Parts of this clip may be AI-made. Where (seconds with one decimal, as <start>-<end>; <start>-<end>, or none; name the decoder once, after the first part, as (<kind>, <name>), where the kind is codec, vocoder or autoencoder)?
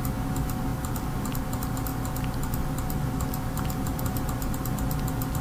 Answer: none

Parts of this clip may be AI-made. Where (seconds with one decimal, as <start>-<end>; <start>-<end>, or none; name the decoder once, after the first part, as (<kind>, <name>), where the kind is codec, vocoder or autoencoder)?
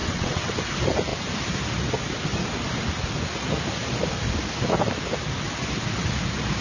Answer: 0.0-0.5 (vocoder, WaveNeXt)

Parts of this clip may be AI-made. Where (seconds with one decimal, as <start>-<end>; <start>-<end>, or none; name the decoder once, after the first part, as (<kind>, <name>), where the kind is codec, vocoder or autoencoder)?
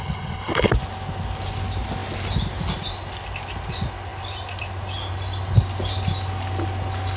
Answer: 0.0-0.7 (codec, HILCodec)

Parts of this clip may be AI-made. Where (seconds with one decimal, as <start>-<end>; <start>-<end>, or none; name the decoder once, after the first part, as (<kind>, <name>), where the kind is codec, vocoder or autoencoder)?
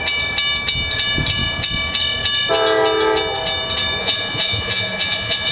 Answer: 4.0-5.5 (vocoder, Vocos)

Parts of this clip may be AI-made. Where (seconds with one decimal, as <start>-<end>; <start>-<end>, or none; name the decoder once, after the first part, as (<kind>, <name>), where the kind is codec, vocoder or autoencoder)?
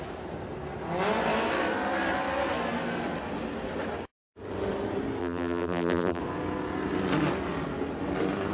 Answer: 5.2-6.2 (vocoder, BigVGAN v2)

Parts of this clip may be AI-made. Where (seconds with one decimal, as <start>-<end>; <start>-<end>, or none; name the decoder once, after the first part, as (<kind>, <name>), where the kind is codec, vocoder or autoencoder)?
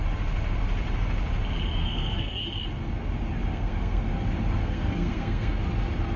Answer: 1.7-2.4 (codec, SNAC); 3.5-4.0; 4.6-5.6